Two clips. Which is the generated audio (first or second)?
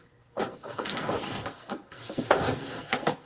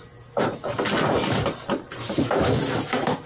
first